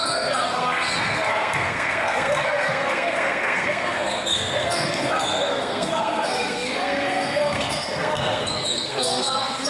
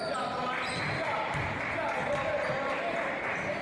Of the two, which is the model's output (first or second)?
first